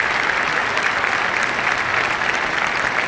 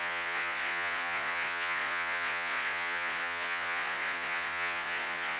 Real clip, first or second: first